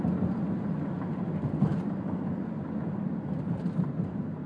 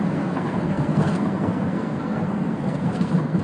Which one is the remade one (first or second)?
second